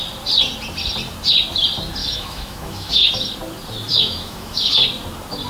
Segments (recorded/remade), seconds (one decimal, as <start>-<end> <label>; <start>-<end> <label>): 0.0-2.0 recorded; 2.0-3.1 remade; 3.1-3.9 recorded; 3.9-4.7 remade; 4.7-5.5 recorded